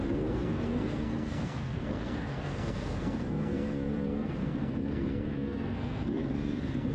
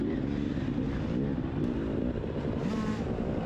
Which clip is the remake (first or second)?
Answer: first